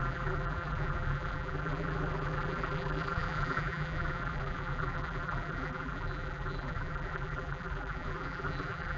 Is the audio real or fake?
fake